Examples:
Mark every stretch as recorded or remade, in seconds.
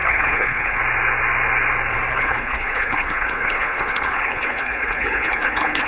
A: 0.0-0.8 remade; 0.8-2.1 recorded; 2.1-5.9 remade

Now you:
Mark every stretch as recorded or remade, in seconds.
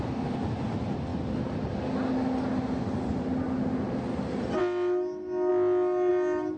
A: 0.0-6.6 recorded